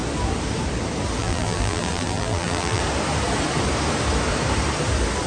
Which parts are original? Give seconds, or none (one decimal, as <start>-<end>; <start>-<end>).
0.0-1.2; 2.8-5.3